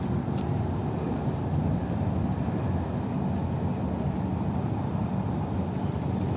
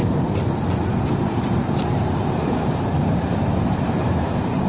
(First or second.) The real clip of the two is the first